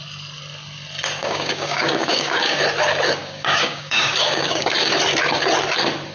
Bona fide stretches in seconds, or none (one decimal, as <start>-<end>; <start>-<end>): 0.0-1.2; 2.6-3.2; 4.7-6.1